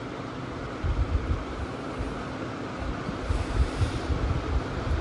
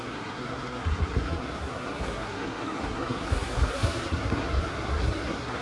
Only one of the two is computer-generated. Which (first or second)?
second